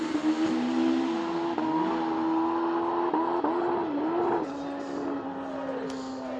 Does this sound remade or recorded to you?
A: recorded